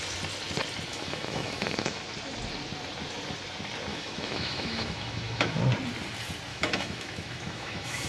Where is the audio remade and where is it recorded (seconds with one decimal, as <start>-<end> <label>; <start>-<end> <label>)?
0.0-0.9 recorded; 0.9-2.0 remade; 2.0-3.9 recorded; 3.9-5.6 remade; 5.6-6.5 recorded; 6.5-8.1 remade